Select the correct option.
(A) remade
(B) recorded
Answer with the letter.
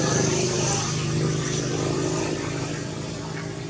B